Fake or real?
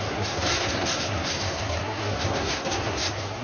fake